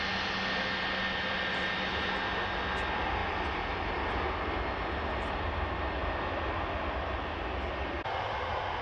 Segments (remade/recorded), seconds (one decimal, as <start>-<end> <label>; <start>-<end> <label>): 0.0-8.8 recorded